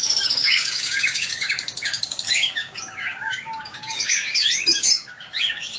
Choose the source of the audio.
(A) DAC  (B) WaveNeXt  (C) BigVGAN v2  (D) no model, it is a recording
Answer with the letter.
A